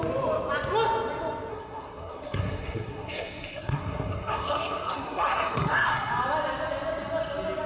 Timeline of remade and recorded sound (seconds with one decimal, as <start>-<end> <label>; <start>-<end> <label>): 0.0-1.5 recorded; 1.5-6.1 remade; 6.1-7.7 recorded